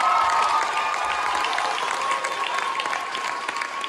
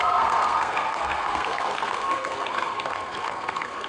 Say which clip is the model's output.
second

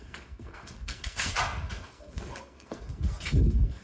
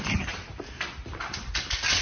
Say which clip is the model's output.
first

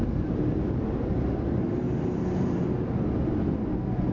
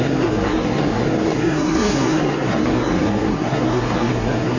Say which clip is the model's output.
second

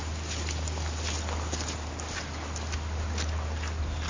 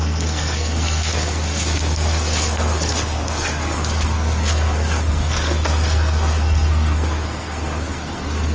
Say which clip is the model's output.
second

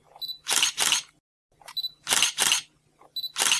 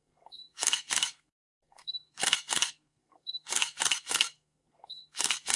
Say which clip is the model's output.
second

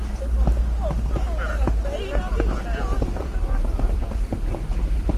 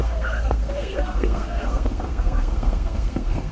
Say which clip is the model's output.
second